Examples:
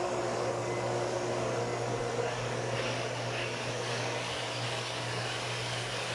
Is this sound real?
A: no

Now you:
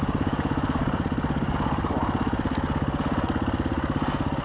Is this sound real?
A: yes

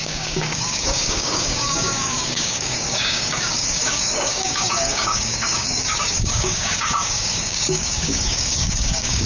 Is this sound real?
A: no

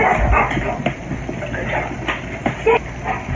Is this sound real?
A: yes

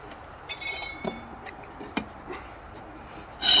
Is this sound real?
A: yes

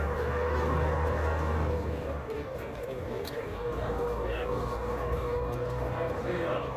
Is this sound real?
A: no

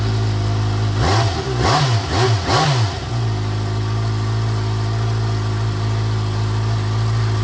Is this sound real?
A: yes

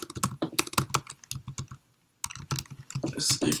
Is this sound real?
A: yes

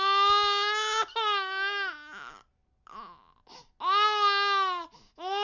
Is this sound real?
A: yes